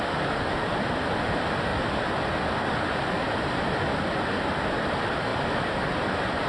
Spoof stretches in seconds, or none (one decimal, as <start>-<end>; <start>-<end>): none